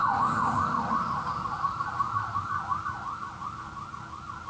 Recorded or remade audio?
recorded